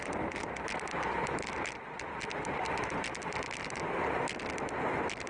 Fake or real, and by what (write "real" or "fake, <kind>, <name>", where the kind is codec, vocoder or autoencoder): real